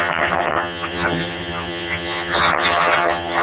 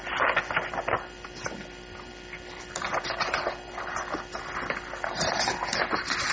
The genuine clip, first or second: second